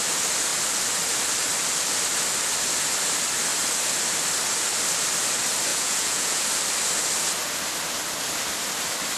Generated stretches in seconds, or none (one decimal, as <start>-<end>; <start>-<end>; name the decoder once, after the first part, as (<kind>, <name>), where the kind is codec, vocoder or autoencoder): 5.7-6.4 (vocoder, Vocos)